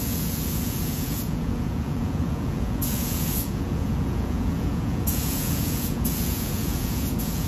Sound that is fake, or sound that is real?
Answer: fake